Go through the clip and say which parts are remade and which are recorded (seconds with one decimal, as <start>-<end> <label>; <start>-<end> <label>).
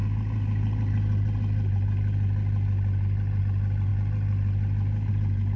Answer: 0.0-5.6 recorded